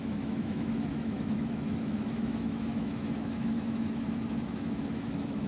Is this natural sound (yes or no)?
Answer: no